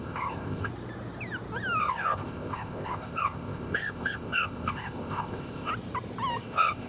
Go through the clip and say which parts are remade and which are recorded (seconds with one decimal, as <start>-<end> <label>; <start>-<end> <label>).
0.0-0.7 remade; 0.7-1.8 recorded; 1.8-5.7 remade; 5.7-6.4 recorded; 6.4-6.9 remade